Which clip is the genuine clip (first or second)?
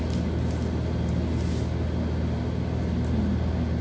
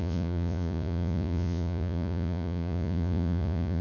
first